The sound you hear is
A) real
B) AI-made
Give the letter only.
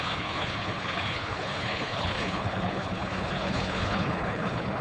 B